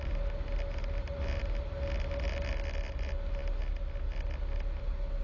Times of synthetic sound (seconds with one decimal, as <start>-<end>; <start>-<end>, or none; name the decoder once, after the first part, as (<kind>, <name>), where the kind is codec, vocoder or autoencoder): none